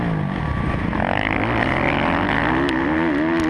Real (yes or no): yes